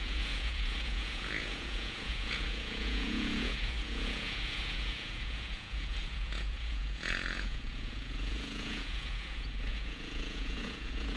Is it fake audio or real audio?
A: fake